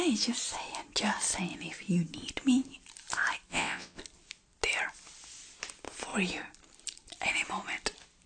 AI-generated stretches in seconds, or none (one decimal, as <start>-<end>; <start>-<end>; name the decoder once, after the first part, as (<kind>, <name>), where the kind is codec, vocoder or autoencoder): 3.5-4.0 (vocoder, WaveNeXt)